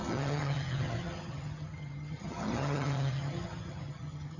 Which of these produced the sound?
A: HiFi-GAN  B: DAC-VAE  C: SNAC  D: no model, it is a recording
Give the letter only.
A